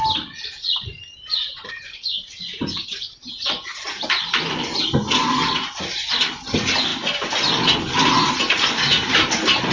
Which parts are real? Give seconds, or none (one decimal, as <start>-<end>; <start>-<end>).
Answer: 0.0-9.7